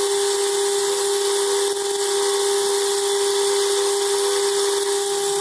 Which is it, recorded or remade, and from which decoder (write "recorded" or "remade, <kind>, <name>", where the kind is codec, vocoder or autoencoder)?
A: recorded